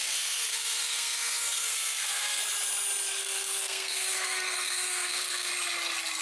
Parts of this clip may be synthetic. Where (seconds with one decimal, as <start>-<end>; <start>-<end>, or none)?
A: 0.0-2.4; 3.2-5.5